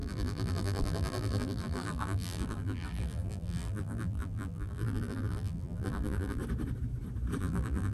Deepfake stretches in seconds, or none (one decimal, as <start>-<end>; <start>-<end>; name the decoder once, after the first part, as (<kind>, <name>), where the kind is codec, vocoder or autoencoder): 0.0-6.4 (vocoder, BigVGAN v2); 7.4-7.9